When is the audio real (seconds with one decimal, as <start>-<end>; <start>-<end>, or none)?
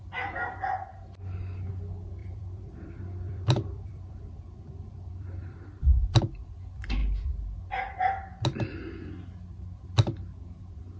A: 0.0-2.2; 6.2-11.0